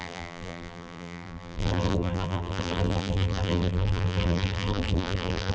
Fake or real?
fake